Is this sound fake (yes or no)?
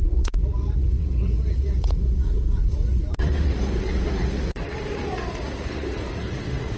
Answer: yes